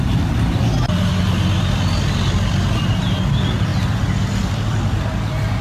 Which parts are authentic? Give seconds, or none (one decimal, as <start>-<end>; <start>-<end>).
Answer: 0.0-5.6